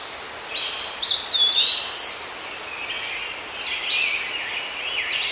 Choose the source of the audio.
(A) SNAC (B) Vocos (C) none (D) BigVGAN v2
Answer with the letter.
C